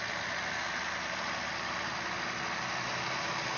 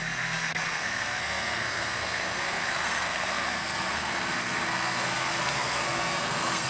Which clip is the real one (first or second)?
first